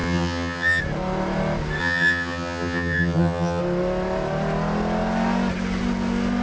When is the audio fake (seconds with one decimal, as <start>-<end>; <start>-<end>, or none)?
0.0-0.8; 1.8-3.6